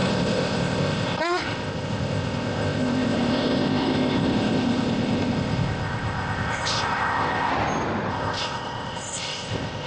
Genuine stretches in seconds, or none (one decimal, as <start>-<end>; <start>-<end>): 7.5-8.1